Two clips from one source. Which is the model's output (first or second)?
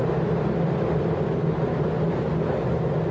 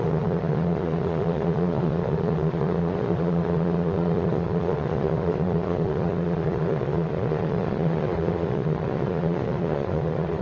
second